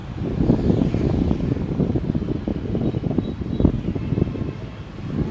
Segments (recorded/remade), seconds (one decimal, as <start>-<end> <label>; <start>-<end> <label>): 0.0-0.8 remade; 0.8-2.5 recorded; 2.5-3.7 remade; 3.7-5.3 recorded